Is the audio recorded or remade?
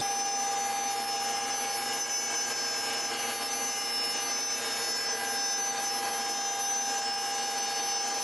recorded